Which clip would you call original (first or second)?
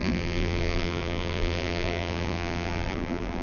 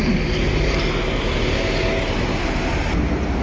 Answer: second